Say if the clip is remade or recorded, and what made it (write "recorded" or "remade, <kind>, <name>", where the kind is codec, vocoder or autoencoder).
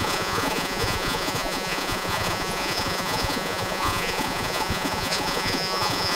remade, vocoder, Vocos